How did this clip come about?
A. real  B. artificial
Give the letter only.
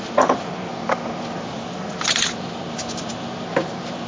A